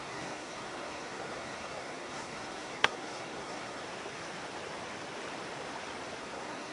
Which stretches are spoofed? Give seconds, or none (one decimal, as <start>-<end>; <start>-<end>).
0.0-3.8; 6.2-6.7